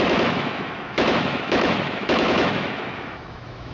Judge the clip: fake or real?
fake